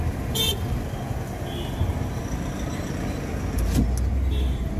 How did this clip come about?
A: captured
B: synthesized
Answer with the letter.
A